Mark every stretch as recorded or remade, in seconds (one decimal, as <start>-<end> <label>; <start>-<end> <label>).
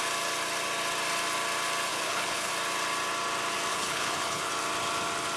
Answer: 0.0-1.9 recorded; 1.9-2.5 remade; 2.5-3.7 recorded; 3.7-4.5 remade; 4.5-5.4 recorded